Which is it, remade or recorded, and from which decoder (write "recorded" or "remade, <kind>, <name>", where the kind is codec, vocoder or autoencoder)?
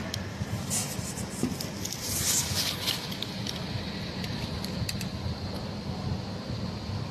recorded